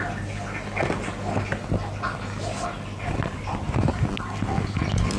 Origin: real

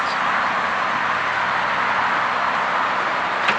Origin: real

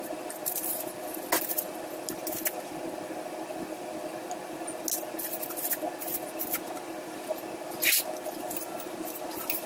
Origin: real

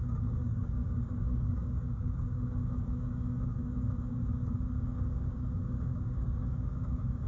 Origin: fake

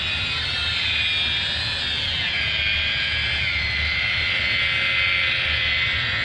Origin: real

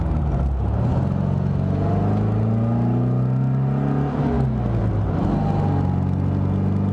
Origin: real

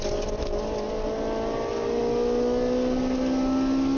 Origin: real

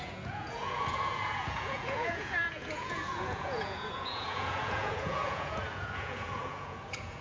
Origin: fake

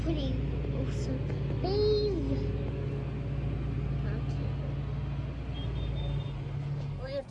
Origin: real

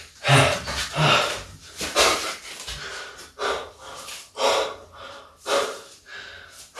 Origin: real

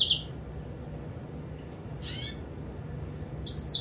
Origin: real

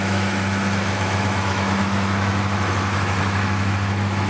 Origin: fake